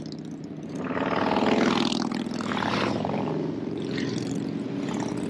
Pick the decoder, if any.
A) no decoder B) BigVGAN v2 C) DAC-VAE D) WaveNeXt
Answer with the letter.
A